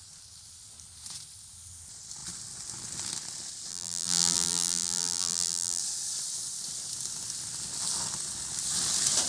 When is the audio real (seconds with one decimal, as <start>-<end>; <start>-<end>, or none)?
0.0-3.7; 5.8-9.3